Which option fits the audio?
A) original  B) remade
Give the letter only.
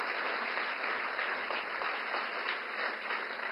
A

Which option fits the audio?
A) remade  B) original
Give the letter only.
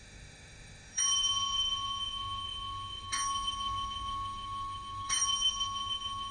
A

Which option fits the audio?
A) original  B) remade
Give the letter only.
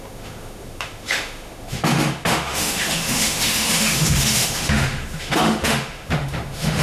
B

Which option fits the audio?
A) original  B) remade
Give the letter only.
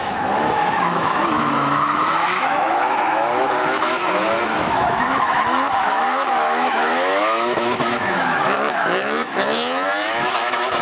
B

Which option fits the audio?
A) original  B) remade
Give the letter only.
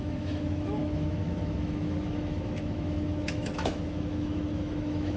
B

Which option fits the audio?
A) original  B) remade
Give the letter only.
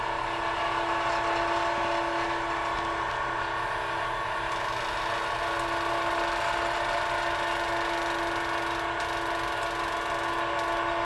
A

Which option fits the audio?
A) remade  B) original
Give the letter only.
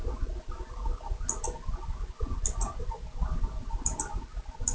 B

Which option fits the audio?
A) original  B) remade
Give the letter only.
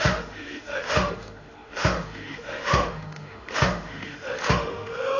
B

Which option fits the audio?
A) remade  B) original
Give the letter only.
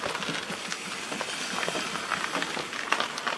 B